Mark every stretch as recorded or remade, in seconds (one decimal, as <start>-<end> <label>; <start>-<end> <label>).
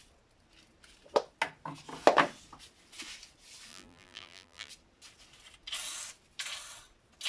0.0-3.7 recorded; 3.7-4.7 remade; 4.7-7.3 recorded